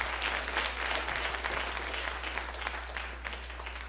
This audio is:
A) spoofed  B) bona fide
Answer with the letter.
B